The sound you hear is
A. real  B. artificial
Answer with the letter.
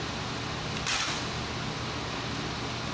A